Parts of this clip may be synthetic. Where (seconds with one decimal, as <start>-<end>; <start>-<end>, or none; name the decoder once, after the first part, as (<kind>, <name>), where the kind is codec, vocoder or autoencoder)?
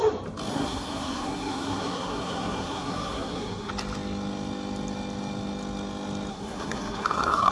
0.5-3.7 (codec, SNAC); 6.3-7.5